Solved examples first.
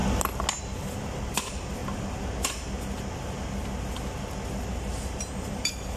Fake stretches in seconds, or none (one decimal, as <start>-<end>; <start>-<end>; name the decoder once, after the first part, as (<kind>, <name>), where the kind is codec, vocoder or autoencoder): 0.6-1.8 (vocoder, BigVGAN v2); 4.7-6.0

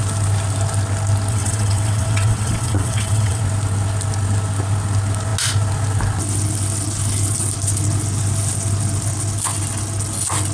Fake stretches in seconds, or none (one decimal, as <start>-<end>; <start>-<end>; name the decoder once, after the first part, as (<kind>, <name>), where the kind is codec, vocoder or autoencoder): 1.3-3.4 (vocoder, WaveNeXt)

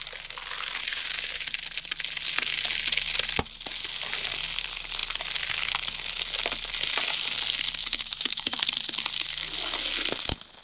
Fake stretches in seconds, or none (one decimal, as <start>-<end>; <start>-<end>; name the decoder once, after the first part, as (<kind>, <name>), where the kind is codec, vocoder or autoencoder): 0.9-1.4 (codec, DAC); 7.8-8.6